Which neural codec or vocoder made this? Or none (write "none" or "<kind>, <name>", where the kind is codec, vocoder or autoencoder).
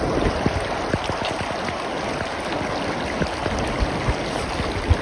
none